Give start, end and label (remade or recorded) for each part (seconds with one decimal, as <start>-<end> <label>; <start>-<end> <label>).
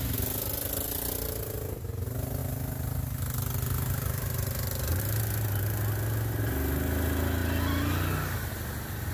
0.0-9.1 recorded